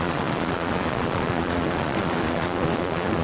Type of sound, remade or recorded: remade